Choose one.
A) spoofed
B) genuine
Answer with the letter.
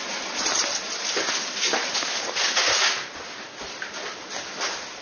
B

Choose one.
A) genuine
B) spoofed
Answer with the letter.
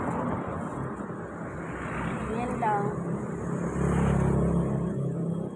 A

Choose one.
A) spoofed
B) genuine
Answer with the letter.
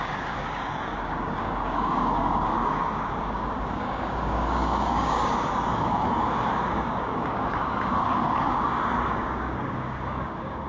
A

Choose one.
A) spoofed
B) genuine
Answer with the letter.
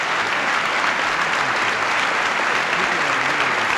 B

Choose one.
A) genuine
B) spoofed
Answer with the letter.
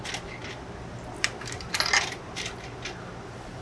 A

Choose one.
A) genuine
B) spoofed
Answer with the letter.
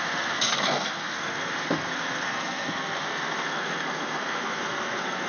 B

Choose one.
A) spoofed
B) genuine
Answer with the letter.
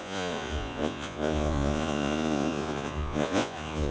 A